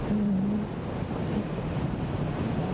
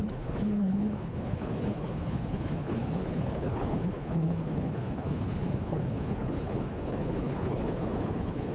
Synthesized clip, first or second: second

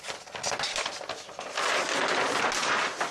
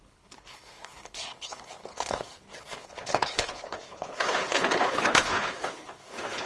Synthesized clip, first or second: second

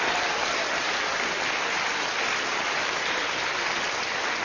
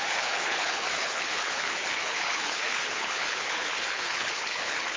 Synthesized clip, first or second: second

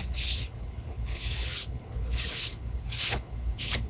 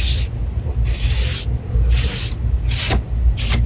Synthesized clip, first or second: first